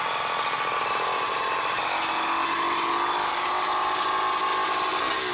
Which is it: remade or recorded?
recorded